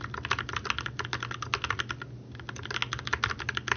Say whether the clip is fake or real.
real